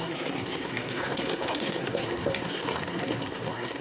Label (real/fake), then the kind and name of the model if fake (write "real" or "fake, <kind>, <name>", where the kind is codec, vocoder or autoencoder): fake, codec, SNAC